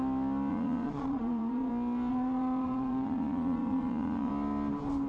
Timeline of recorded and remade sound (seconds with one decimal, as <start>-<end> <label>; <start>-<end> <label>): 0.0-0.5 recorded; 0.5-1.7 remade; 1.7-2.1 recorded; 2.1-4.3 remade; 4.3-5.1 recorded